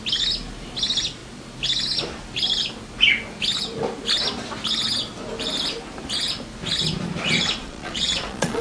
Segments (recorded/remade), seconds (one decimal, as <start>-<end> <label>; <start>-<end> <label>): 0.0-7.6 recorded; 7.6-8.6 remade